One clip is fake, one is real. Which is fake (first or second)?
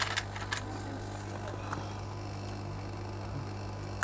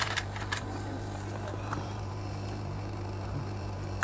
second